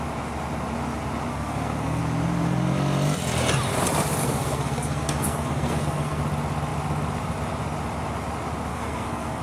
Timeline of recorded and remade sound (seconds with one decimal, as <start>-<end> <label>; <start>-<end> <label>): 0.0-1.3 recorded; 1.3-2.0 remade; 2.0-4.2 recorded; 4.2-6.2 remade; 6.2-8.7 recorded; 8.7-9.4 remade